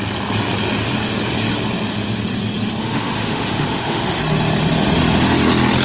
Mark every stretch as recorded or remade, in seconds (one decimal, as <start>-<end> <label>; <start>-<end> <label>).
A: 0.0-2.8 recorded; 2.8-4.2 remade; 4.2-5.8 recorded